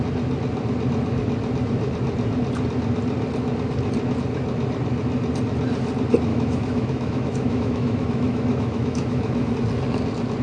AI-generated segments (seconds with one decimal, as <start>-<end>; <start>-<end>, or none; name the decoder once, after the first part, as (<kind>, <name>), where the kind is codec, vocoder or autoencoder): 6.3-9.5 (autoencoder, DAC-VAE)